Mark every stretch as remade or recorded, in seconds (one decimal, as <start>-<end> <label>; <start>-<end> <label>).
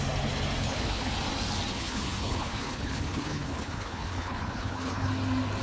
0.0-0.6 recorded; 0.6-1.1 remade; 1.1-1.7 recorded; 1.7-5.1 remade; 5.1-5.6 recorded